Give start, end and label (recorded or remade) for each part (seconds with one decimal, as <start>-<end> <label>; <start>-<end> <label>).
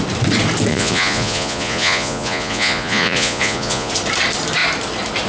0.0-0.7 recorded; 0.7-3.9 remade; 3.9-5.3 recorded